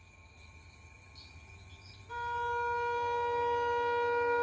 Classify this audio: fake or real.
real